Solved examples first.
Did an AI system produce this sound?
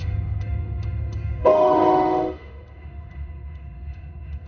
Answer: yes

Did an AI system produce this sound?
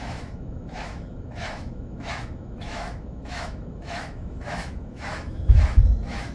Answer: yes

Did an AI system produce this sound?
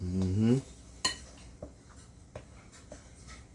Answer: no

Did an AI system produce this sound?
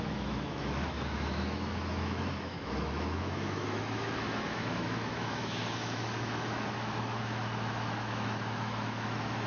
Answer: yes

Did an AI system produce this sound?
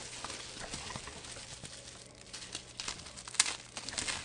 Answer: no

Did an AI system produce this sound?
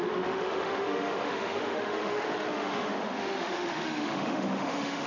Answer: yes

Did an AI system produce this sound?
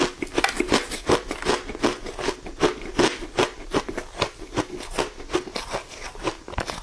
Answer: no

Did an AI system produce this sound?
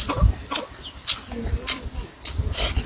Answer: no